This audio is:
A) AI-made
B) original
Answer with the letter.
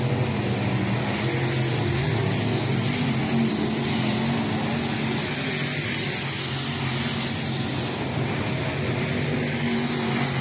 B